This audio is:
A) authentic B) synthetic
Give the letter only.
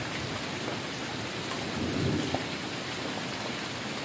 A